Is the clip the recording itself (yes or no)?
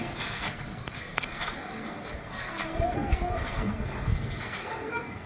no